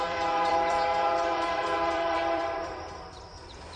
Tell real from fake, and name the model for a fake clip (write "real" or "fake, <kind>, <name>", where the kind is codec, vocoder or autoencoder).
fake, vocoder, BigVGAN v2